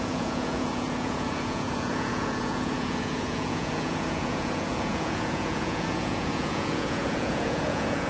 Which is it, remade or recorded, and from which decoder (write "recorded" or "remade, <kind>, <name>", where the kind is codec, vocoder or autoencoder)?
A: remade, vocoder, Vocos